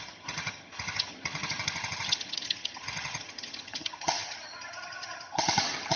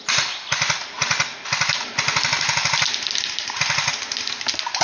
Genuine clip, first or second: second